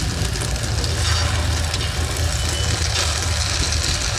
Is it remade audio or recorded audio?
recorded